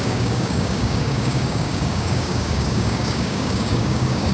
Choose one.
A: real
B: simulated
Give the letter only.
B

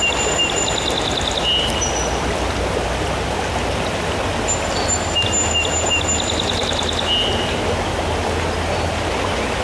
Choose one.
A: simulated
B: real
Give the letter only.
B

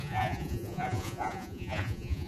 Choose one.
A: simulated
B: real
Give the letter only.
A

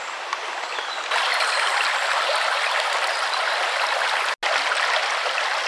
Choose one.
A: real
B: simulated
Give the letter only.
A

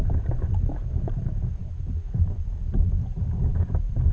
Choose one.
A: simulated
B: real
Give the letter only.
A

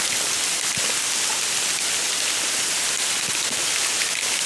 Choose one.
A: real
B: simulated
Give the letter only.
A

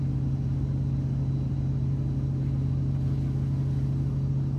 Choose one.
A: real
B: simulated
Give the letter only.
A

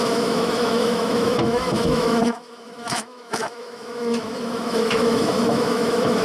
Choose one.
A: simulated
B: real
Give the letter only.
A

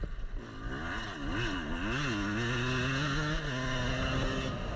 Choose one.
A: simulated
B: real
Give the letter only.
B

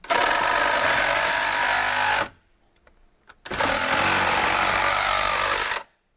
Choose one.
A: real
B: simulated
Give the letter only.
A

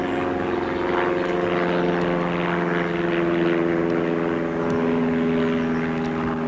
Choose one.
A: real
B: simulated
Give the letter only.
A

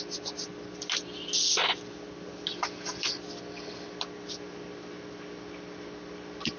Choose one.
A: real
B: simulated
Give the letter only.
A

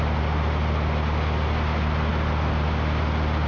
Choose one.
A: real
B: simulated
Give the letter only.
A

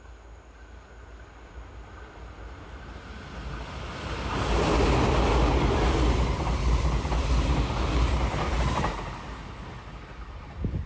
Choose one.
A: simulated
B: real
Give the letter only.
B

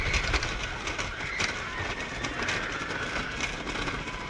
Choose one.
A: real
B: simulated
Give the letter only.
A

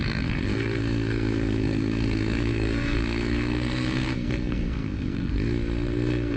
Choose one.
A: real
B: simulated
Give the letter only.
B